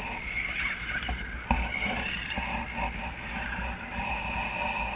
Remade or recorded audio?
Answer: recorded